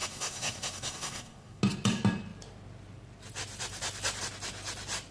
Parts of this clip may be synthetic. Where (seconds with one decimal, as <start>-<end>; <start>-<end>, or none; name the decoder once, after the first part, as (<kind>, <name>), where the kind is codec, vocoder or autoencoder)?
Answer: 0.0-1.6 (codec, SNAC)